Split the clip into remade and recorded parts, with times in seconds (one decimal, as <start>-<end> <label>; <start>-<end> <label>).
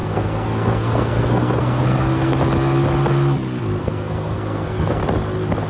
0.0-2.3 remade; 2.3-3.8 recorded; 3.8-5.0 remade; 5.0-5.7 recorded